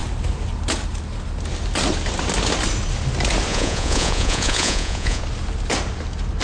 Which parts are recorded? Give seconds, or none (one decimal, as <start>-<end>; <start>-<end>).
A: 0.0-3.5; 5.2-6.4

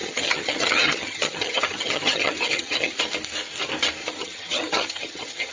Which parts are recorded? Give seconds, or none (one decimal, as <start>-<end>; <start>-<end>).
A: 3.0-4.0